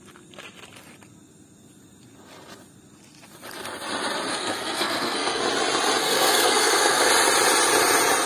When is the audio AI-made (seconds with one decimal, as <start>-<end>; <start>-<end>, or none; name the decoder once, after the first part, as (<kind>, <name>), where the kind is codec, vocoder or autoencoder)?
4.3-5.4 (codec, SNAC); 6.0-7.1